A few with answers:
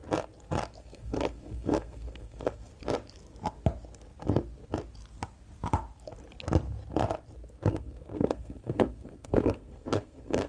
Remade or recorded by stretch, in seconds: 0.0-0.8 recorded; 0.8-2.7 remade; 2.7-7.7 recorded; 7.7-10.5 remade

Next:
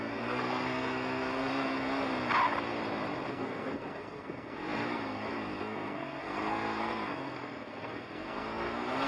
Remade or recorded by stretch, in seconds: 0.0-2.1 remade; 2.1-3.3 recorded; 3.3-9.1 remade